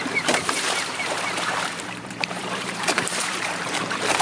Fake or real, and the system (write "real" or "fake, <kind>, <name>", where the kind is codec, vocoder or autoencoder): fake, vocoder, BigVGAN v2